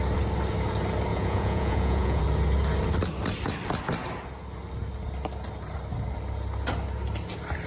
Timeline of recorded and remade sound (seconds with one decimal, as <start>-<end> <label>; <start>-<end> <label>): 0.0-1.1 recorded; 1.1-2.2 remade; 2.2-7.7 recorded